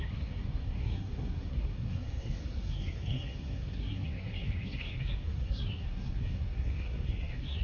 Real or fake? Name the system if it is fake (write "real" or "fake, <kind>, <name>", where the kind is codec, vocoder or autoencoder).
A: fake, codec, SNAC